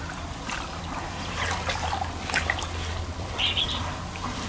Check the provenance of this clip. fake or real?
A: fake